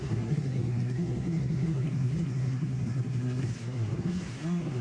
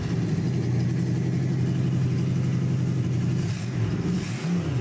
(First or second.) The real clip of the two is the second